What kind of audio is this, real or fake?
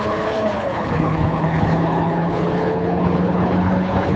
fake